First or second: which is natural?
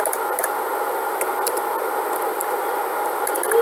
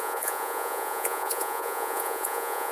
first